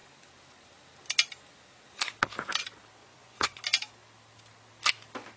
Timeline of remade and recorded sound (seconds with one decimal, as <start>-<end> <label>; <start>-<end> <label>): 0.0-3.0 recorded; 3.0-3.6 remade; 3.6-5.4 recorded